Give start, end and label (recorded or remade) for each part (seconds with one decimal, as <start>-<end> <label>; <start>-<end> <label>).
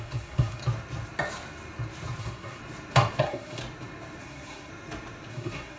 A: 0.0-0.6 remade; 0.6-2.2 recorded; 2.2-2.6 remade; 2.6-3.2 recorded; 3.2-3.6 remade; 3.6-4.2 recorded; 4.2-4.7 remade; 4.7-5.3 recorded; 5.3-5.8 remade